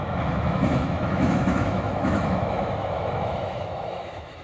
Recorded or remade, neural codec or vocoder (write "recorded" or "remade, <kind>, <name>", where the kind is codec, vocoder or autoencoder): remade, autoencoder, DAC-VAE